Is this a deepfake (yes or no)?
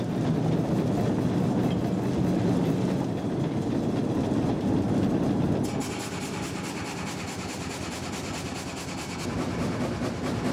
no